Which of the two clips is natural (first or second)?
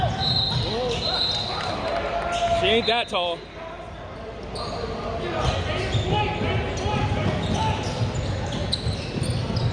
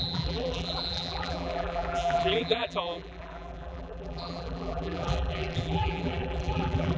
first